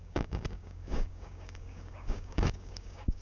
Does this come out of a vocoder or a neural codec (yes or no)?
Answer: yes